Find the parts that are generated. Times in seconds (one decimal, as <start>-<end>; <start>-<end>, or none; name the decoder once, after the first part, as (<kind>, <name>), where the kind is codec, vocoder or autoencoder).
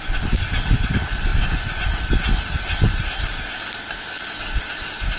none